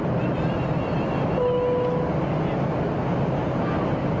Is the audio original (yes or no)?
yes